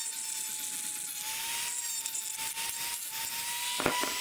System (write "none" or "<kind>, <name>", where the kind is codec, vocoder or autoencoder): none